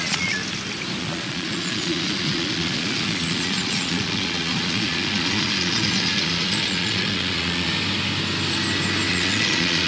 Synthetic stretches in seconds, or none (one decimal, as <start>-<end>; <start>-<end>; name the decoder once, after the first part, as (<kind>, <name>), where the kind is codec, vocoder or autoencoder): 0.0-0.4 (vocoder, Vocos); 1.0-7.7; 9.1-9.9